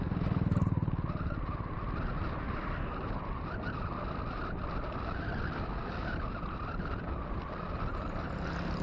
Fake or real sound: real